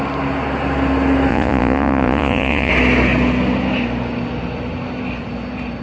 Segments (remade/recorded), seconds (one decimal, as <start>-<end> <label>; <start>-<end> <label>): 0.0-1.3 recorded; 1.3-2.7 remade; 2.7-5.8 recorded